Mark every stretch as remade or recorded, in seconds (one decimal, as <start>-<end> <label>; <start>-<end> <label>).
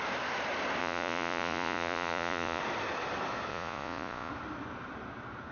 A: 0.0-0.8 recorded; 0.8-2.6 remade; 2.6-3.5 recorded; 3.5-4.3 remade; 4.3-5.5 recorded